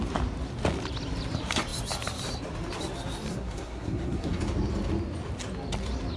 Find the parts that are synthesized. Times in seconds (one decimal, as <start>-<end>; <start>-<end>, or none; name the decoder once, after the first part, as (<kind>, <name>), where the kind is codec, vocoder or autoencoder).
3.3-4.4 (codec, SNAC)